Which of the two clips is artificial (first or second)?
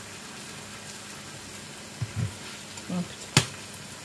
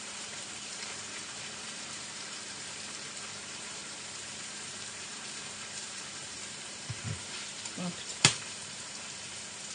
second